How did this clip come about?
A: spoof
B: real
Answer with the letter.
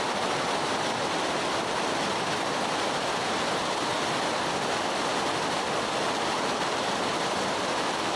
B